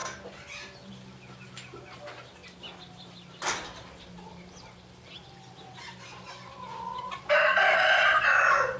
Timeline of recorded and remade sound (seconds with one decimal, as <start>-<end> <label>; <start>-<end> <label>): 0.0-8.8 recorded